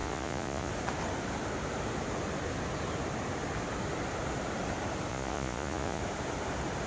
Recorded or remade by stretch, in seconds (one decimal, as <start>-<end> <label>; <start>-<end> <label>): 0.0-0.7 remade; 0.7-5.1 recorded; 5.1-6.0 remade; 6.0-6.9 recorded